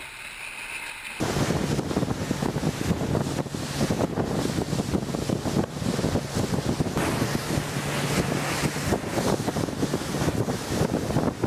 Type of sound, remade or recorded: recorded